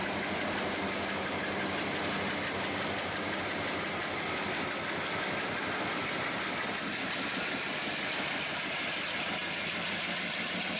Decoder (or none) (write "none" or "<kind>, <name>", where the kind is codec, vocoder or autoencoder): none